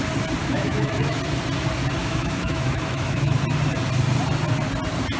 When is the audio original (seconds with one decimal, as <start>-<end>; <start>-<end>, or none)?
0.0-0.4; 1.2-2.0; 3.4-5.2